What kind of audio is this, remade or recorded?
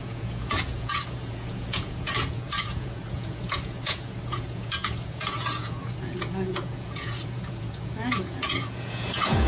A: remade